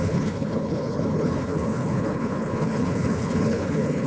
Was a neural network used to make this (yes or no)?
yes